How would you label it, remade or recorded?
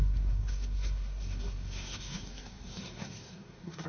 remade